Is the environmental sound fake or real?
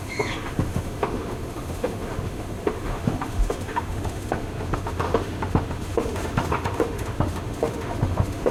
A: fake